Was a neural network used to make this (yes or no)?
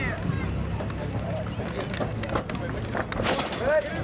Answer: no